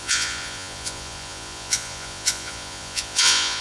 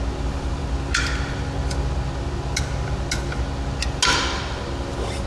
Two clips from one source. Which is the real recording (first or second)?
second